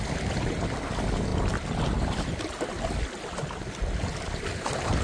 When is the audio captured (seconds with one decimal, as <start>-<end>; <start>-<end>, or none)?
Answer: 0.0-5.0